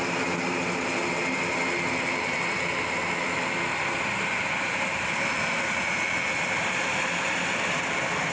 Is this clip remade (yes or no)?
no